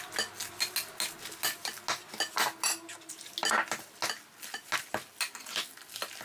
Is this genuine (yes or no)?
yes